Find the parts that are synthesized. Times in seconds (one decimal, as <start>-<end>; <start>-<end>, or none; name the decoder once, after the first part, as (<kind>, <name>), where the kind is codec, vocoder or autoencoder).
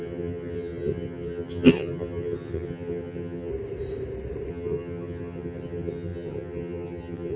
0.0-3.5 (vocoder, HiFi-GAN); 4.5-7.4